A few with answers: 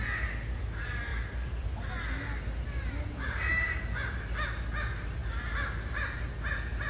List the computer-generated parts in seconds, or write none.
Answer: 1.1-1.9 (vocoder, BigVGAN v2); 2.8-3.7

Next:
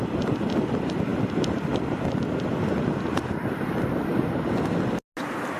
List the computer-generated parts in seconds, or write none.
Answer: none

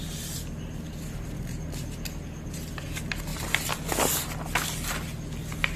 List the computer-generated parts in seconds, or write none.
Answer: none

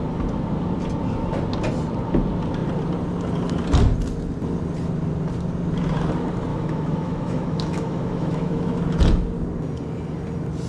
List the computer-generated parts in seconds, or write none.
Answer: 6.5-8.8 (autoencoder, DAC-VAE)